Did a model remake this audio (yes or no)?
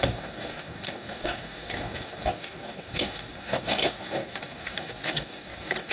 yes